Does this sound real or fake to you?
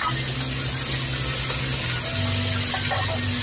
real